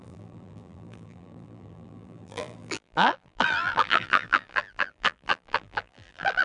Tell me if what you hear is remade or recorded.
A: remade